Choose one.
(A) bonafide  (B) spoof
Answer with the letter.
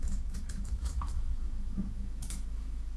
B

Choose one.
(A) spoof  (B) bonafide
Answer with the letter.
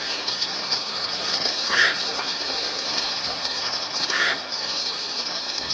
A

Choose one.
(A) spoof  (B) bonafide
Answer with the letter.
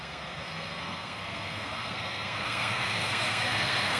A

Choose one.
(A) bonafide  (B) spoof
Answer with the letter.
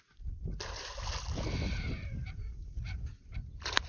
A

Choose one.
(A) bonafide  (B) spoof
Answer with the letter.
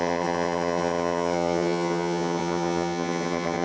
B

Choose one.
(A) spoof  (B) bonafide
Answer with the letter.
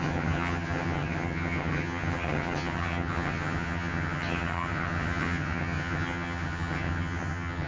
A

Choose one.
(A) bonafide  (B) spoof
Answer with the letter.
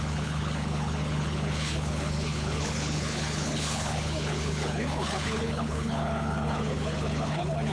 B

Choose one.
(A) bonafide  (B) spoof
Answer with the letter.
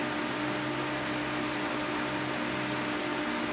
A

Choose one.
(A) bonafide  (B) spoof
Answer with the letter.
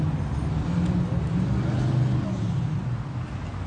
A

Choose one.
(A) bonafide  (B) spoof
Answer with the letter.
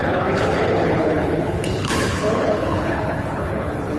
B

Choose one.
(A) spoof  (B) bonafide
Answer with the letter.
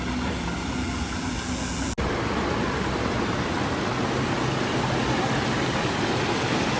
B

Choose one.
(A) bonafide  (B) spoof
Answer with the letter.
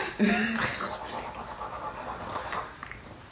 A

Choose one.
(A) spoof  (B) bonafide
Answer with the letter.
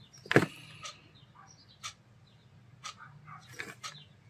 B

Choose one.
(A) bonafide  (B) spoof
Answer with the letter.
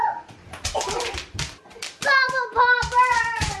A